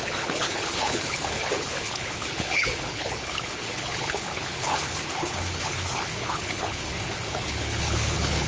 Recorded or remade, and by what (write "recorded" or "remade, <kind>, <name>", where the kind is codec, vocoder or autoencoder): remade, codec, HILCodec